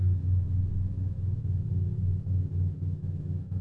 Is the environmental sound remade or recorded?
remade